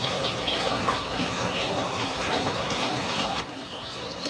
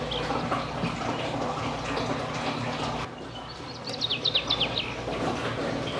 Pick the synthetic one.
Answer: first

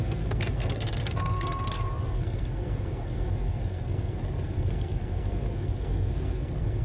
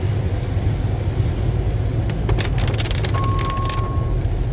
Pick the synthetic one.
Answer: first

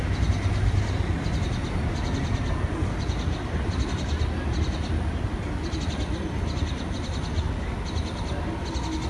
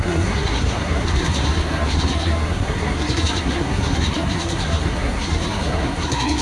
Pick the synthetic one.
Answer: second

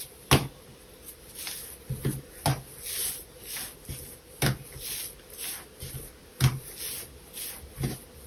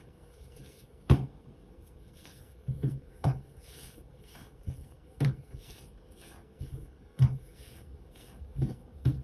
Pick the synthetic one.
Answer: second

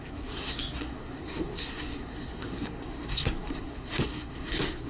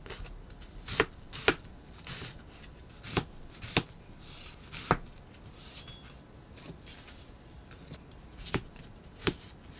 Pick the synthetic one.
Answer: first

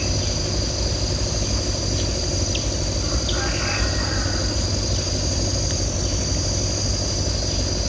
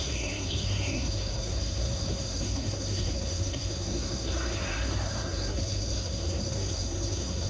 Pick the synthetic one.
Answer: second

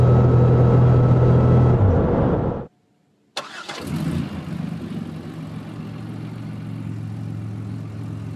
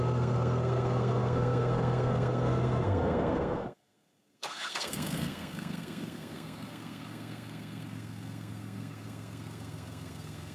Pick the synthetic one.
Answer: second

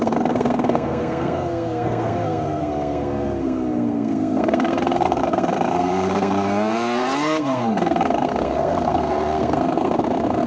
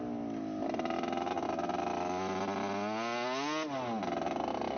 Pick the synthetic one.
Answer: first